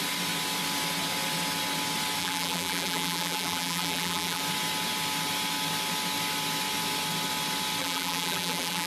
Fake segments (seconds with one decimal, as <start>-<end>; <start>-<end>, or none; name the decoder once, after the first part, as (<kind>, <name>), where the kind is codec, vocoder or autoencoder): 2.2-4.4 (vocoder, BigVGAN v2); 7.8-8.9